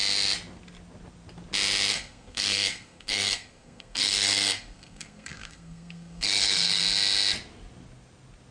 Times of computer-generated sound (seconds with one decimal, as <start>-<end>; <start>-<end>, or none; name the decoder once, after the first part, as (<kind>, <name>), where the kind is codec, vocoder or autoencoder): 1.9-6.8 (codec, SNAC)